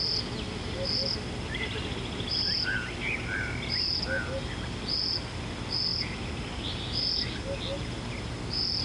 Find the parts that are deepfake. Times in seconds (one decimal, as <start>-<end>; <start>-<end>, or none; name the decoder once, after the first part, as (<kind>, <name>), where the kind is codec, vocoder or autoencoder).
none